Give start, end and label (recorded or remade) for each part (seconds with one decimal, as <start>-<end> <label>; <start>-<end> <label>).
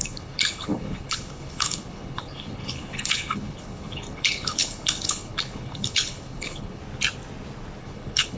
0.0-6.8 remade; 6.8-7.8 recorded; 7.8-8.4 remade